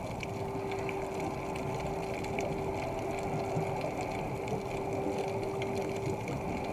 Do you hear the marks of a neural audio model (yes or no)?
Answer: no